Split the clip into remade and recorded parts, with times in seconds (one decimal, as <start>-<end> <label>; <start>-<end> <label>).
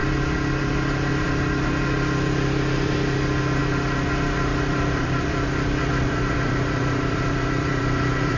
0.0-4.5 recorded; 4.5-8.4 remade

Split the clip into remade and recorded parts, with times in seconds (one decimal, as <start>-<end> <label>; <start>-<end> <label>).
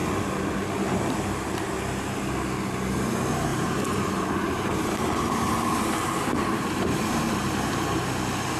0.0-3.5 recorded; 3.5-8.0 remade; 8.0-8.6 recorded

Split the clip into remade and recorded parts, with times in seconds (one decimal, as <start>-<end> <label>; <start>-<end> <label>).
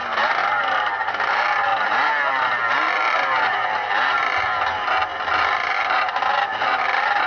0.0-7.3 recorded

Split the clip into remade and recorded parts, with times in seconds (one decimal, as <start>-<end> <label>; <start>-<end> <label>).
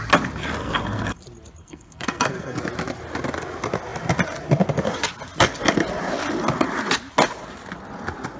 0.0-0.6 recorded; 0.6-1.2 remade; 1.2-1.6 recorded; 1.6-2.6 remade; 2.6-8.4 recorded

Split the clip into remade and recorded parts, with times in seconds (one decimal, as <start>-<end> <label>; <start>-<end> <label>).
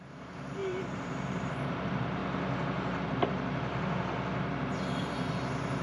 0.0-2.2 remade; 2.2-5.0 recorded; 5.0-5.8 remade